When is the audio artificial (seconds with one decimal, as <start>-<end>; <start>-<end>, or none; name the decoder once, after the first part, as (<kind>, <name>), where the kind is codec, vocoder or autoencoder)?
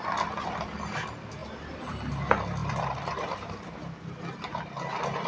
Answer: 1.4-2.1 (vocoder, BigVGAN v2); 2.6-4.6